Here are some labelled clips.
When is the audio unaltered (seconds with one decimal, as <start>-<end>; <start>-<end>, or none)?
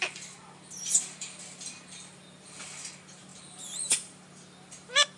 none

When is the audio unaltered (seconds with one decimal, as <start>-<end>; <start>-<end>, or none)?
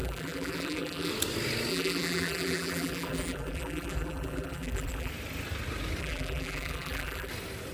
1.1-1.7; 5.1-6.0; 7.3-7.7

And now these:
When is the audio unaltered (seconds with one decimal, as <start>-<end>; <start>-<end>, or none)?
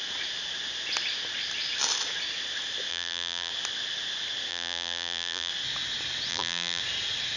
0.0-2.9; 3.5-4.5; 5.5-6.3; 6.8-7.4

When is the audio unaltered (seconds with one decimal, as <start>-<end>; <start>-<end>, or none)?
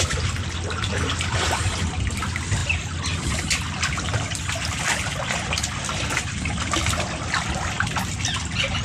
0.0-8.8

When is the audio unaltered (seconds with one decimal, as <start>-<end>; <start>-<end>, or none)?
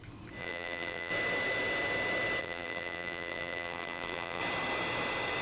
0.0-0.4; 1.1-2.4; 4.4-5.4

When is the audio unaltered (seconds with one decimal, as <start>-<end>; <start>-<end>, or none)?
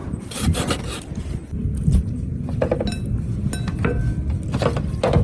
0.7-1.4; 2.7-5.2